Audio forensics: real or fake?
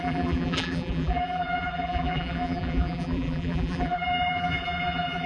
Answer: fake